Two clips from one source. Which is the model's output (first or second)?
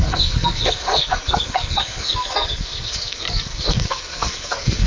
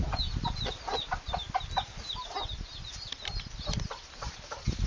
first